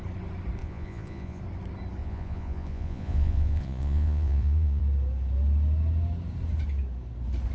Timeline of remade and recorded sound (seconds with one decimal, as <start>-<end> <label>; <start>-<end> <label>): 0.0-0.6 recorded; 0.6-1.4 remade; 1.4-2.0 recorded; 2.0-4.8 remade; 4.8-7.5 recorded

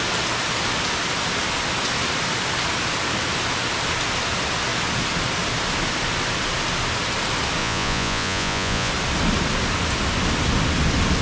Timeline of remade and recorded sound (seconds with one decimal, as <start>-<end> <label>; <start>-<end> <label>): 0.0-7.6 recorded; 7.6-8.9 remade; 8.9-11.2 recorded

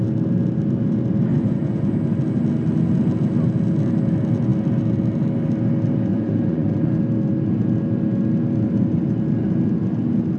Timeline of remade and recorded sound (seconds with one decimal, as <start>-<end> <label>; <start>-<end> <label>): 0.0-1.3 recorded; 1.3-1.9 remade; 1.9-6.1 recorded; 6.1-6.9 remade; 6.9-10.4 recorded

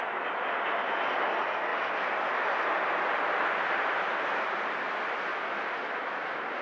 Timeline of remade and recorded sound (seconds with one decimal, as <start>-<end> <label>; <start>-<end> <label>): 0.0-6.6 recorded